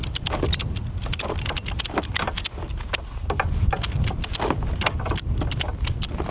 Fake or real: real